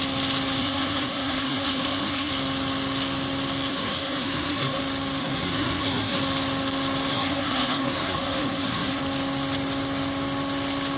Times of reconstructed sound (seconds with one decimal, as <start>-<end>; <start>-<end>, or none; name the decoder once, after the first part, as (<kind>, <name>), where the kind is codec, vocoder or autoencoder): 0.6-2.3 (codec, SNAC); 3.7-4.8; 5.2-6.2; 7.1-9.0